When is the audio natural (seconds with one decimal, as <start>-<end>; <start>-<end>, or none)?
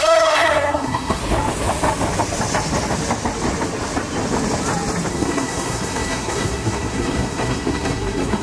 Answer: 1.2-5.1